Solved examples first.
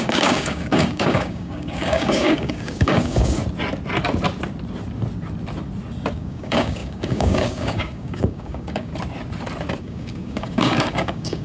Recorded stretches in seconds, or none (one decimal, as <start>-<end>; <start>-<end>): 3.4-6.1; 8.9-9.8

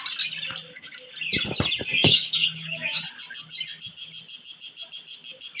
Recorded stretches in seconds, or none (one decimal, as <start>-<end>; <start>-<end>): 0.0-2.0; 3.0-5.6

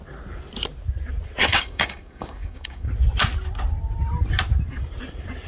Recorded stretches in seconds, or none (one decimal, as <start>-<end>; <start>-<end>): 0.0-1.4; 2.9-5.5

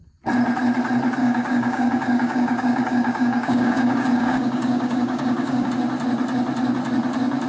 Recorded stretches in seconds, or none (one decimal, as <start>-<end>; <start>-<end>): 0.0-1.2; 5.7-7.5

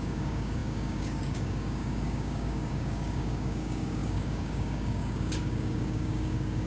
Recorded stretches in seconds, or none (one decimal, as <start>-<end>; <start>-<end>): none

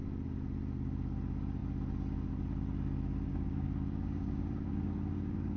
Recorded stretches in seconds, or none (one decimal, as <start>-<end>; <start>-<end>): 0.0-3.3